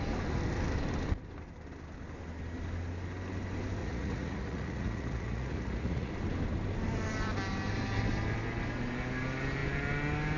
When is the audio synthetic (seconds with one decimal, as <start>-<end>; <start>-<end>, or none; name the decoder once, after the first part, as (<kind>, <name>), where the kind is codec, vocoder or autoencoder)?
3.8-6.1 (vocoder, Vocos)